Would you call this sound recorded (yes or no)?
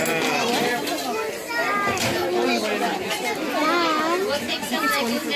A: yes